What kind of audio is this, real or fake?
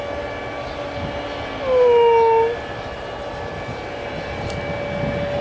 real